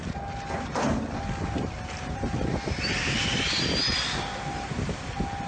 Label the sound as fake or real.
real